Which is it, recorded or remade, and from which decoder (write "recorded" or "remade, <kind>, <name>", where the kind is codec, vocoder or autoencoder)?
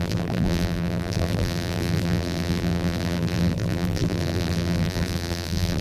remade, vocoder, BigVGAN v2